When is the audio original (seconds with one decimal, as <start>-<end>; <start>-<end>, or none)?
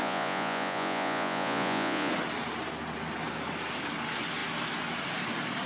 2.1-5.7